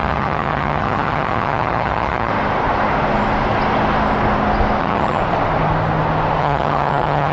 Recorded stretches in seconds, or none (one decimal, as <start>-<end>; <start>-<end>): 2.3-4.8; 5.2-6.4

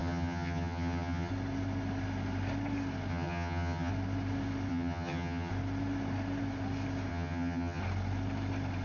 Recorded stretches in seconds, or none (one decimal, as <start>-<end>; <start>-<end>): 1.3-3.1; 3.9-4.7; 5.5-7.1; 7.8-8.8